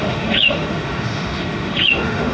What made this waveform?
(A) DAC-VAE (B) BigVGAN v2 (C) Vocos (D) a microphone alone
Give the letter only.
A